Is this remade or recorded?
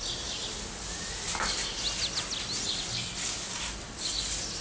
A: recorded